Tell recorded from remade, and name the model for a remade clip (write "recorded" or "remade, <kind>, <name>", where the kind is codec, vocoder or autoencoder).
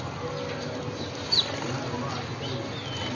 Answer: recorded